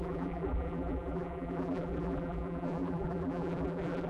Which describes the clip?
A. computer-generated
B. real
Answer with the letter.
A